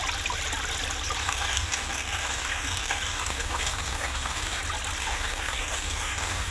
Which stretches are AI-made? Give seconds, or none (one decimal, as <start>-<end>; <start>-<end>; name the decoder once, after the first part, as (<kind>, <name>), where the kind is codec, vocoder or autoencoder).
1.2-4.6 (codec, DAC); 5.0-6.5